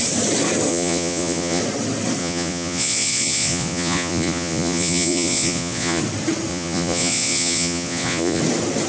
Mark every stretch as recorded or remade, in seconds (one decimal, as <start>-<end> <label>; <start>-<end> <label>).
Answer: 0.0-0.7 recorded; 0.7-1.6 remade; 1.6-2.2 recorded; 2.2-6.0 remade; 6.0-6.5 recorded; 6.5-8.4 remade; 8.4-8.9 recorded